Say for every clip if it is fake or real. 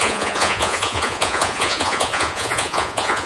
fake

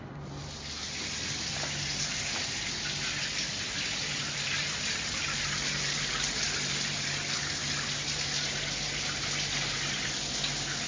real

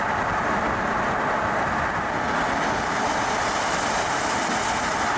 real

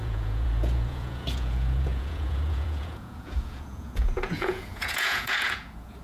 fake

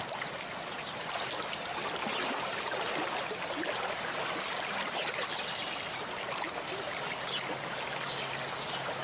real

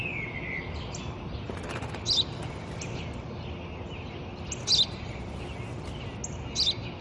real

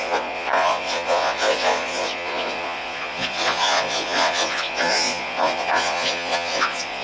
fake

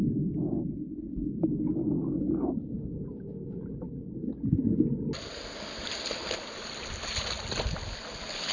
real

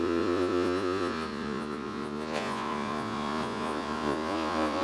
fake